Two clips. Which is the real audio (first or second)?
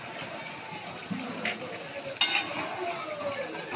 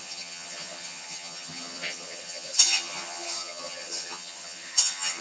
first